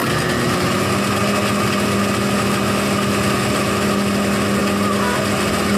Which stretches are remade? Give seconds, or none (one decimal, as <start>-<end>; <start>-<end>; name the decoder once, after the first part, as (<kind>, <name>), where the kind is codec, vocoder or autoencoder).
none

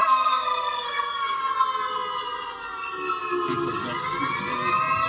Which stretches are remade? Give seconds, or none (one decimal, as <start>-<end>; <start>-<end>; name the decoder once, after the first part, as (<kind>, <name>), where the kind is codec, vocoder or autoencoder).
0.0-1.5 (codec, SNAC)